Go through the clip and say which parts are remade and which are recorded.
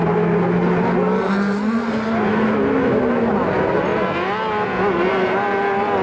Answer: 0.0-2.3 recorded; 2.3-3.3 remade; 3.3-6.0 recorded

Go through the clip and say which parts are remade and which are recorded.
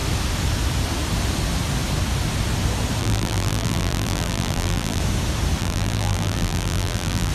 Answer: 0.0-3.0 recorded; 3.0-5.0 remade; 5.0-5.6 recorded; 5.6-7.3 remade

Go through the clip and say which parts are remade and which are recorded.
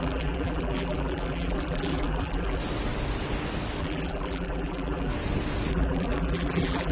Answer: 0.0-2.6 remade; 2.6-3.8 recorded; 3.8-5.1 remade; 5.1-5.7 recorded; 5.7-6.9 remade